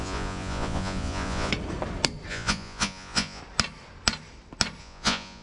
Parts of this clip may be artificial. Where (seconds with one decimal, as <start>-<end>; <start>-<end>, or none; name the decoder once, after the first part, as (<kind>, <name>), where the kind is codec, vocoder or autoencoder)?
0.0-1.5 (vocoder, Vocos); 2.3-3.4; 4.8-5.4